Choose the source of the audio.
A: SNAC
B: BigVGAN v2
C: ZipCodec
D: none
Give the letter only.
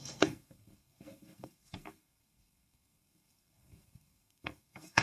A